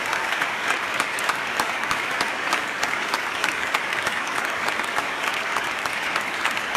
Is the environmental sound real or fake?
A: fake